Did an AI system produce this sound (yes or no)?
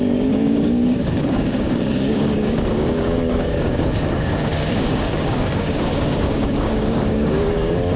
yes